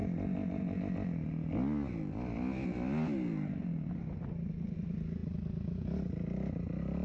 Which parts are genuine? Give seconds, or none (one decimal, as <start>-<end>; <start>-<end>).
0.0-7.0